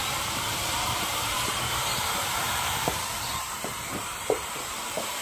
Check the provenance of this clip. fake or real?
fake